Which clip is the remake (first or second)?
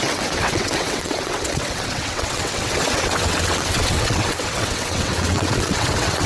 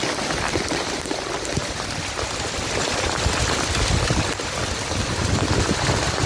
first